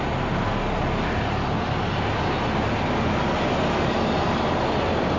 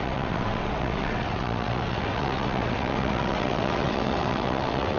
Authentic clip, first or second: first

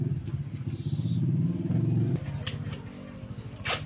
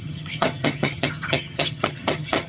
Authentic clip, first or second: first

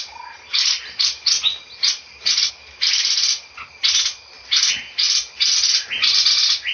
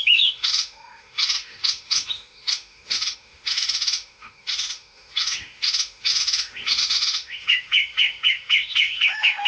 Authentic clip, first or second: first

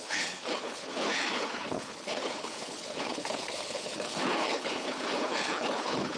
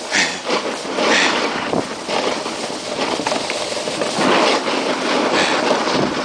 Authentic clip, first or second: second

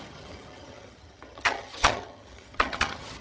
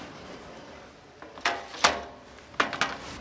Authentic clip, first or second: second